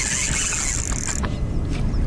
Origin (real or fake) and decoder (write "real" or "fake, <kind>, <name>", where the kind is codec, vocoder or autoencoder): real